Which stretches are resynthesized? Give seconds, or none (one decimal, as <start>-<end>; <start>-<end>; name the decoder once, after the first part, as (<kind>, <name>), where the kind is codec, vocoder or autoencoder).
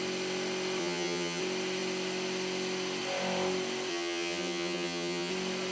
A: 0.8-1.4 (vocoder, HiFi-GAN); 3.9-5.3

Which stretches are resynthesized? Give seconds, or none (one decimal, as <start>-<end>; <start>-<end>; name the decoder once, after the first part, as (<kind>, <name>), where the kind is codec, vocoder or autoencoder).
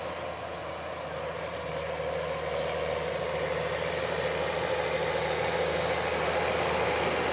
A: none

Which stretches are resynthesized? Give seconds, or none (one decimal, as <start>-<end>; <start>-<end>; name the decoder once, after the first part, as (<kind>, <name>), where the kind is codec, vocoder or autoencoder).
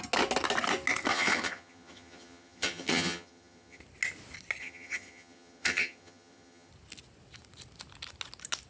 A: 1.1-3.8 (vocoder, HiFi-GAN); 4.6-6.7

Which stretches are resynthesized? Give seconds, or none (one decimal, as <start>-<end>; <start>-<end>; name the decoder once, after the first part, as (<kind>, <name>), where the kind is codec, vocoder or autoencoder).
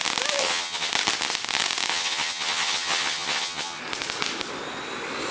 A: 0.4-0.9 (vocoder, HiFi-GAN); 1.9-3.8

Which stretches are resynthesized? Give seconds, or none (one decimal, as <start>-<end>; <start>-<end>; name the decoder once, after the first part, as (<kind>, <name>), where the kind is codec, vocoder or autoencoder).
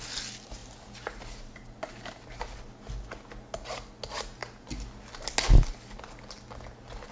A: none